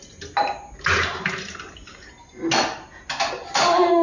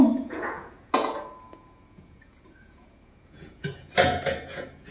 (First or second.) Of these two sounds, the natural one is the first